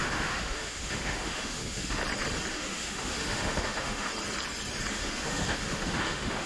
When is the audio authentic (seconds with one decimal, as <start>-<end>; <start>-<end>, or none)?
2.0-2.5; 4.1-4.9